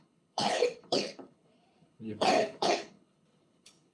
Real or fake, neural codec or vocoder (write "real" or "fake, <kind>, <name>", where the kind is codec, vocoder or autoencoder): fake, codec, HILCodec